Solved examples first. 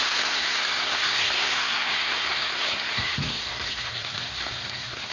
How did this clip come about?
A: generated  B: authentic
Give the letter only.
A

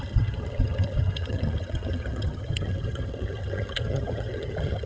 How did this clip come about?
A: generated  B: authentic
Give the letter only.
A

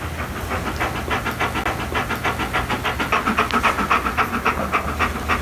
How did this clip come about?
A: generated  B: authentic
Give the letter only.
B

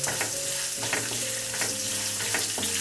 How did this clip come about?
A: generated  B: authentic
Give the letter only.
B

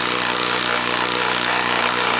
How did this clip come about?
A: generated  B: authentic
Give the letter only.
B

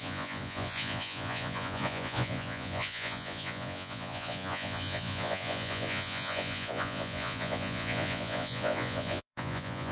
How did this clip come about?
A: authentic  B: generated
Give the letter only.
B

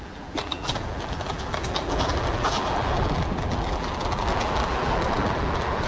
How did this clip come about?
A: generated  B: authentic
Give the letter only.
A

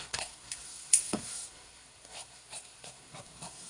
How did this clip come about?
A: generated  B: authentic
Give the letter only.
A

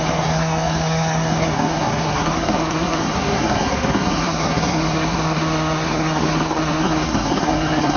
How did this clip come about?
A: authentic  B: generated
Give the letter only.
B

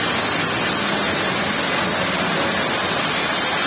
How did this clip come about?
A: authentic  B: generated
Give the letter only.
A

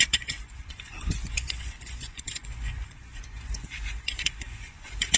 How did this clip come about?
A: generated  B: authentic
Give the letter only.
A